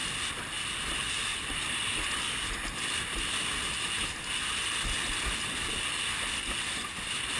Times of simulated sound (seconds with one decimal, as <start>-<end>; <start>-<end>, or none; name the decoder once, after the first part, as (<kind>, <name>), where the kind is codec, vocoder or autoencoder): none